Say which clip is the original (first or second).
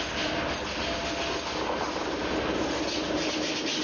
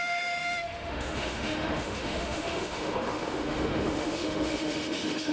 first